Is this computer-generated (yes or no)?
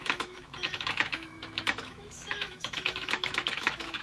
yes